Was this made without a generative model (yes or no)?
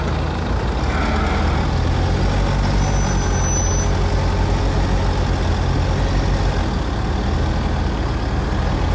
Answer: yes